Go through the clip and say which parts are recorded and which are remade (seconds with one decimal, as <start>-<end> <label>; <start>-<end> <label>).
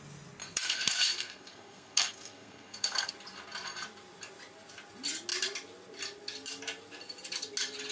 0.0-0.4 recorded; 0.4-3.1 remade; 3.1-7.9 recorded